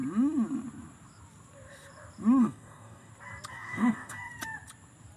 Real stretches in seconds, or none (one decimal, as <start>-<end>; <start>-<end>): 0.0-2.4; 3.1-3.5; 4.3-5.2